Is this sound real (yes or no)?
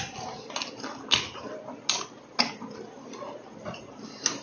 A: yes